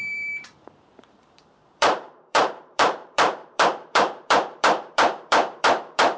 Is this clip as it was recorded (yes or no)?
no